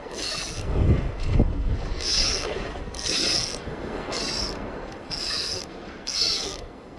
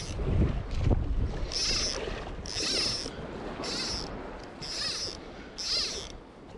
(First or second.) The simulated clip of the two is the first